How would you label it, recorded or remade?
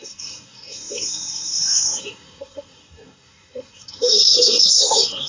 remade